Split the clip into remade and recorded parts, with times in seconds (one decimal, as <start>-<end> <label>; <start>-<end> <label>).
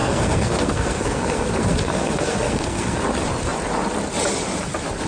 0.0-3.0 remade; 3.0-5.1 recorded